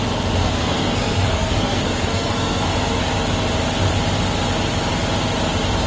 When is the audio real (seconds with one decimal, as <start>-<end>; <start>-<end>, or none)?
0.0-0.4; 3.0-5.9